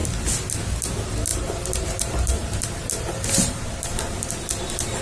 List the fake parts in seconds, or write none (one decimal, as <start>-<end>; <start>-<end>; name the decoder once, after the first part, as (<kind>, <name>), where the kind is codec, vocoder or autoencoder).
1.3-4.3 (vocoder, BigVGAN v2)